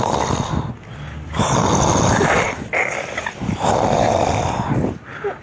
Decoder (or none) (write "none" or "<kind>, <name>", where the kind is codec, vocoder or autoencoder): none